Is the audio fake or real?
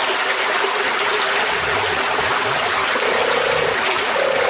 real